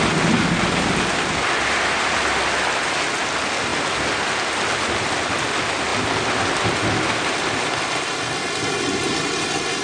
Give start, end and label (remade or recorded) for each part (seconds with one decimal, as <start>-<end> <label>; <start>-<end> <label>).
0.0-9.8 recorded